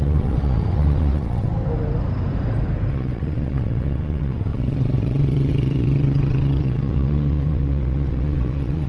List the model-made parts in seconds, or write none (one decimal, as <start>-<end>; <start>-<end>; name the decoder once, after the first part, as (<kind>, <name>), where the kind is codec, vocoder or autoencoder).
0.0-1.5 (vocoder, WaveNeXt); 2.9-8.9